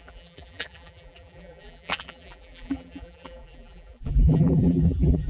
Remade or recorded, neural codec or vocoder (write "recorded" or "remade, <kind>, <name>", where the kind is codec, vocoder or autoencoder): remade, vocoder, BigVGAN v2